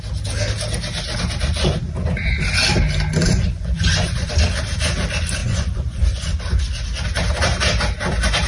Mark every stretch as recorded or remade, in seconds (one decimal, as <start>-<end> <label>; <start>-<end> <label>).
0.0-3.2 recorded; 3.2-4.3 remade; 4.3-5.4 recorded; 5.4-6.4 remade; 6.4-8.5 recorded

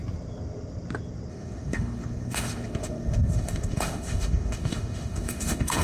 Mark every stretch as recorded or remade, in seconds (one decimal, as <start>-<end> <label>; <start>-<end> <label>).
0.0-1.3 recorded; 1.3-5.8 remade

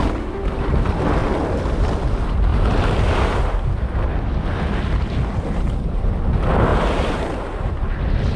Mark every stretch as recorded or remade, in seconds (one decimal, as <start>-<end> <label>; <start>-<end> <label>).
0.0-8.4 recorded

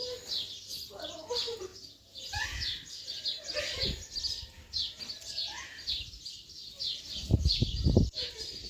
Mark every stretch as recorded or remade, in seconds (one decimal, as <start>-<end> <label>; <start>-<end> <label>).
0.0-1.7 remade; 1.7-5.9 recorded; 5.9-8.7 remade

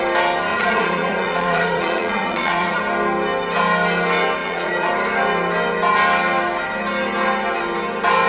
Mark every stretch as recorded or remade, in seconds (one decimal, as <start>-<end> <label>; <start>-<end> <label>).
0.0-0.5 recorded; 0.5-2.8 remade; 2.8-4.4 recorded; 4.4-4.9 remade; 4.9-8.3 recorded